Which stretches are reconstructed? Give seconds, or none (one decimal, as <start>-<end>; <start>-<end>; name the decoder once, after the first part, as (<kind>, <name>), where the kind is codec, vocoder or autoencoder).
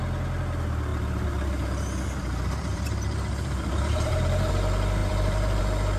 0.9-4.5 (vocoder, BigVGAN v2); 5.0-5.6